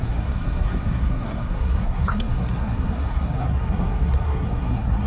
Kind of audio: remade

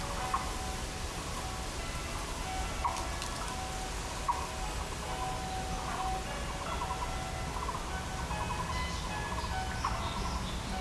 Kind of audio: recorded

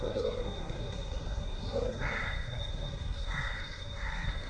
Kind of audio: remade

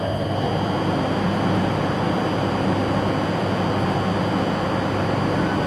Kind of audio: recorded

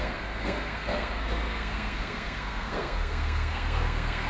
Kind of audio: remade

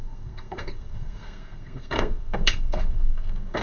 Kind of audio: remade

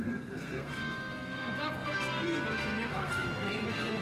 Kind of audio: remade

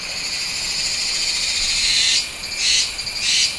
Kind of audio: recorded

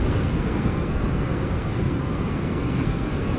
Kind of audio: remade